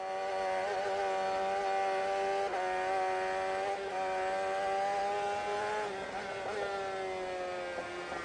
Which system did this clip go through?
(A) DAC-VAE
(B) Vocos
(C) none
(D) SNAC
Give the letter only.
C